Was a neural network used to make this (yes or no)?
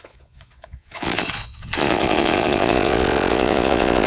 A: yes